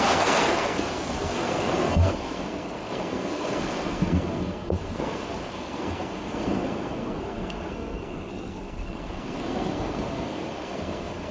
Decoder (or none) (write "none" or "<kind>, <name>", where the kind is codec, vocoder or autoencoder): codec, SNAC